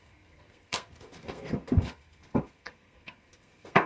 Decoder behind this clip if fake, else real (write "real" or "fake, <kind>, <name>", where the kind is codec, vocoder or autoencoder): fake, codec, SNAC